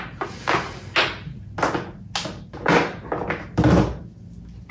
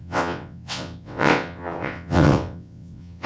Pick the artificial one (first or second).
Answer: second